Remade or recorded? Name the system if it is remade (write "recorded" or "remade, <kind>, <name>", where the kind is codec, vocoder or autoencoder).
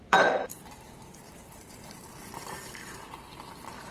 remade, vocoder, BigVGAN v2